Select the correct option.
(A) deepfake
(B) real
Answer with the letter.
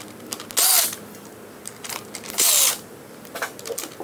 B